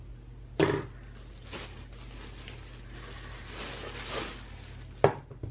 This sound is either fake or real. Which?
real